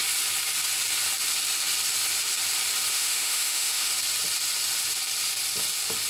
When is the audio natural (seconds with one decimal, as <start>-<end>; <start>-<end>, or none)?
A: 0.0-2.9; 3.9-6.1